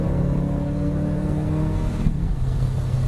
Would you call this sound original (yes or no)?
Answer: no